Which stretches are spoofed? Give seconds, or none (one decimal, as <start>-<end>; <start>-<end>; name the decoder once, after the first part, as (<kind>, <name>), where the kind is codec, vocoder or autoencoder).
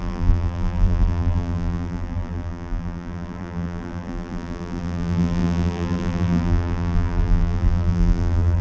0.0-8.6 (vocoder, BigVGAN v2)